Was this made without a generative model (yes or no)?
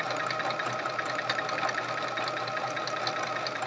yes